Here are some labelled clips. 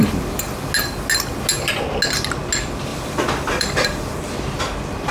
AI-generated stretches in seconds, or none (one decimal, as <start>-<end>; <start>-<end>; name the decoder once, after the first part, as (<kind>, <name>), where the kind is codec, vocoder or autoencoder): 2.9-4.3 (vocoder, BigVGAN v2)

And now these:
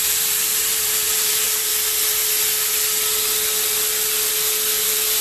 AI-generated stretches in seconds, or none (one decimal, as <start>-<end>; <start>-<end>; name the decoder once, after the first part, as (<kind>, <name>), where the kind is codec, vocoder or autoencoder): 0.0-1.7 (vocoder, BigVGAN v2); 4.8-5.2

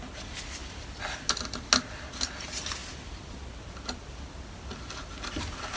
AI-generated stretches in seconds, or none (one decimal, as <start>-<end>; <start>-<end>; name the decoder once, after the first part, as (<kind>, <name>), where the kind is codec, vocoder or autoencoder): none

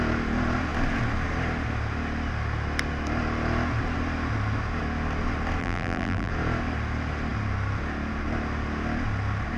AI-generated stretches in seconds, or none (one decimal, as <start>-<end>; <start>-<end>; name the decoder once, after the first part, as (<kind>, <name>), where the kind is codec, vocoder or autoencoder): 5.6-6.3 (vocoder, BigVGAN v2)

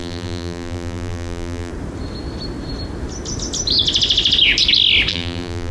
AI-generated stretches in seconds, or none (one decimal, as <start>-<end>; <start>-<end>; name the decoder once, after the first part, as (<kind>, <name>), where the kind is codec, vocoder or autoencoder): 0.0-1.7 (vocoder, BigVGAN v2); 5.1-5.7

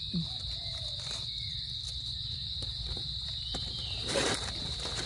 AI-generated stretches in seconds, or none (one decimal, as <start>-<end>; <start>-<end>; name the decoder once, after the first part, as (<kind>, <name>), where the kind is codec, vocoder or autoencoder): 2.1-4.5 (vocoder, BigVGAN v2)